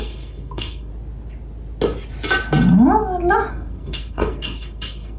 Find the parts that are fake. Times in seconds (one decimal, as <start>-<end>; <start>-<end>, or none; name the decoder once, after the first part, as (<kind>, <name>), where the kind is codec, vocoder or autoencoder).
0.0-0.9 (codec, SNAC); 3.5-5.2